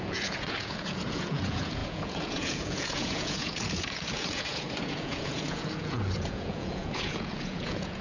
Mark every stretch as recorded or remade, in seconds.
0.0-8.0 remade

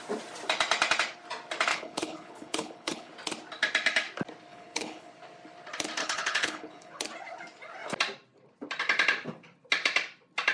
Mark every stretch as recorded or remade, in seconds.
0.0-1.7 recorded; 1.7-3.1 remade; 3.1-4.5 recorded; 4.5-5.1 remade; 5.1-6.0 recorded; 6.0-7.0 remade; 7.0-10.5 recorded

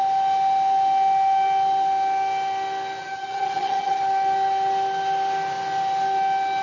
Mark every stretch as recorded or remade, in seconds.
0.0-3.0 recorded; 3.0-4.0 remade; 4.0-6.6 recorded

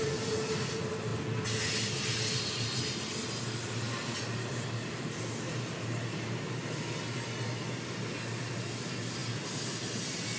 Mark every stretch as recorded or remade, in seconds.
0.0-10.4 recorded

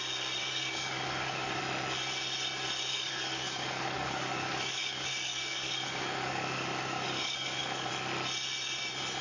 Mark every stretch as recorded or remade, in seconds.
0.0-0.4 recorded; 0.4-1.6 remade; 1.6-2.9 recorded; 2.9-7.9 remade; 7.9-9.2 recorded

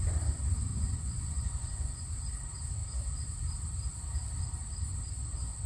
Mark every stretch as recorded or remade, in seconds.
0.0-0.7 recorded; 0.7-2.1 remade; 2.1-5.7 recorded

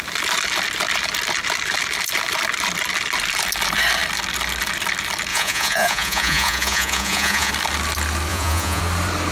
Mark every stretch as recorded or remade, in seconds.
0.0-5.3 recorded; 5.3-7.5 remade; 7.5-8.3 recorded; 8.3-8.8 remade; 8.8-9.3 recorded